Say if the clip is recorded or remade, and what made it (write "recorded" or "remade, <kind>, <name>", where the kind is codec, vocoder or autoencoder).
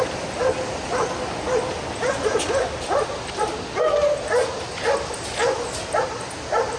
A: recorded